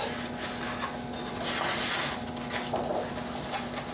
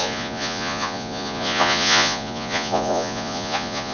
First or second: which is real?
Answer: first